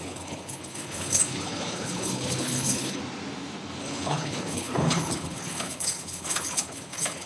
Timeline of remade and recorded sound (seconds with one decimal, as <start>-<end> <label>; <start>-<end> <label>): 0.0-3.0 remade; 3.0-3.8 recorded; 3.8-7.3 remade